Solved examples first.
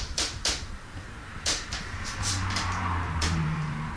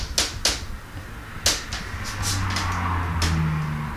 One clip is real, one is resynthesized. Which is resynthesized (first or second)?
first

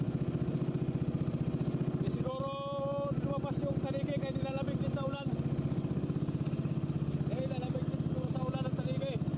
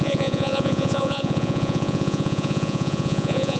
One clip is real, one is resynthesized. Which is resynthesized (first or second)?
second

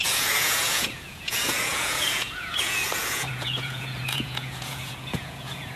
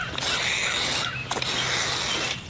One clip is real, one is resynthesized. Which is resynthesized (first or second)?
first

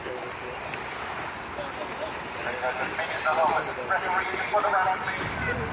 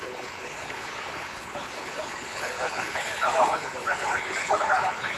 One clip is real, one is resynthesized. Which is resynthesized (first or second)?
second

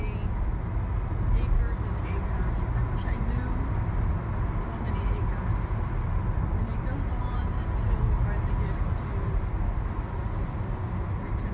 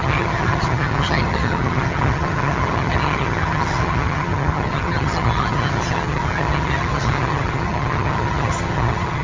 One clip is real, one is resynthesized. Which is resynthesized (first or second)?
second